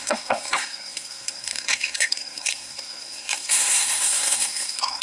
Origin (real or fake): fake